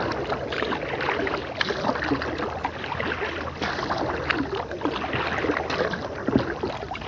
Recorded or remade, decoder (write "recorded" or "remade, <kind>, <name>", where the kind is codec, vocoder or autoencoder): recorded